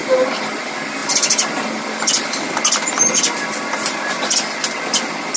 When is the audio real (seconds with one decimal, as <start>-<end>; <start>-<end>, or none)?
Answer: 0.0-1.0; 4.2-5.4